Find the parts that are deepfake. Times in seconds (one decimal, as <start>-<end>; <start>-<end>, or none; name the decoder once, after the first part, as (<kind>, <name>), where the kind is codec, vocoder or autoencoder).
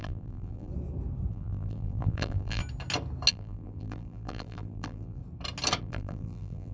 0.0-0.7 (vocoder, BigVGAN v2); 1.3-2.6; 3.3-5.2; 5.8-6.7